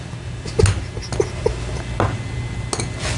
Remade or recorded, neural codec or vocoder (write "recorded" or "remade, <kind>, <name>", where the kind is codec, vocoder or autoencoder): recorded